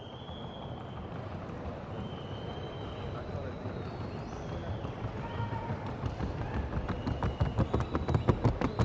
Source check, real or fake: real